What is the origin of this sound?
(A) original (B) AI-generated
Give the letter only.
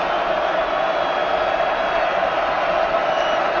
A